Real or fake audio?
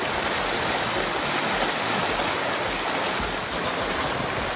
real